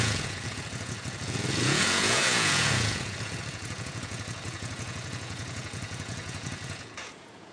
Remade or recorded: remade